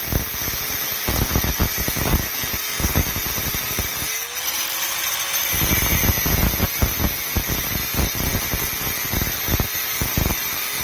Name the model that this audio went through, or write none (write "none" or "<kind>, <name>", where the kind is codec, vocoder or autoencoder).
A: none